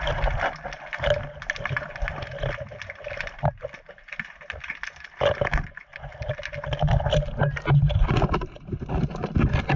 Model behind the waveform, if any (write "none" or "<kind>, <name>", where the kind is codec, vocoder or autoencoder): none